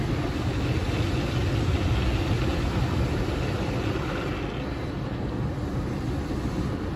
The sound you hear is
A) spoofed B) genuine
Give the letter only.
B